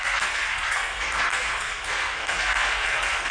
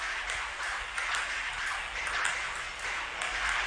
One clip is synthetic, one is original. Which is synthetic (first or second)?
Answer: first